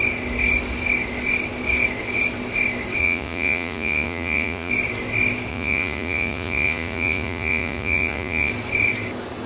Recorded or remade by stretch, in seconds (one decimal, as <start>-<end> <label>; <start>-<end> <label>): 0.0-3.0 recorded; 3.0-4.7 remade; 4.7-5.5 recorded; 5.5-8.5 remade; 8.5-9.5 recorded